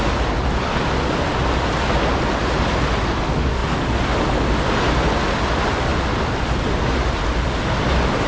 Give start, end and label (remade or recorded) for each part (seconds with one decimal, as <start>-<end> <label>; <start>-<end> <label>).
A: 0.0-8.3 recorded